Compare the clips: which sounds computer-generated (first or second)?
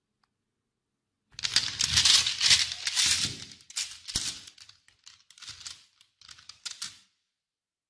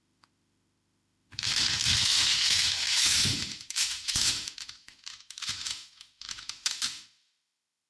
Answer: second